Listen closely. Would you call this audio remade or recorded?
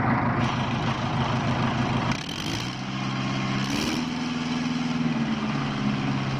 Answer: recorded